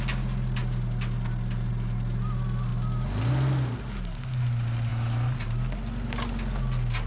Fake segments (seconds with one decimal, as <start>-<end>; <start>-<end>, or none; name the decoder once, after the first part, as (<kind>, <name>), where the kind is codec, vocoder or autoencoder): none